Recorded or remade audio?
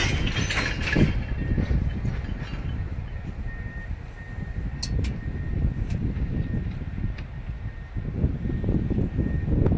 recorded